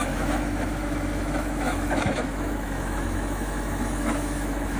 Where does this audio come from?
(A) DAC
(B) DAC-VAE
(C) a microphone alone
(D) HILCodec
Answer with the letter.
B